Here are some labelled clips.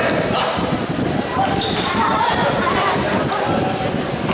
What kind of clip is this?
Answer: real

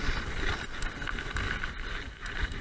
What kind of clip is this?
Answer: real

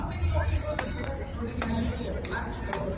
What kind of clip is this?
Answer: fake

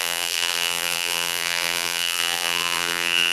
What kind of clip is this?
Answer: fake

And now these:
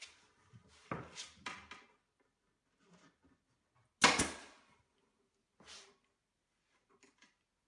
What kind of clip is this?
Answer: real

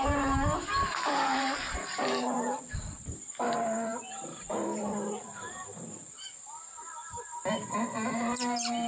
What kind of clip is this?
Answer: fake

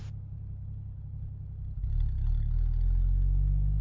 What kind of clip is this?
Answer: real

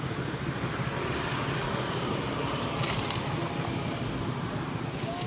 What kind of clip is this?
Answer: real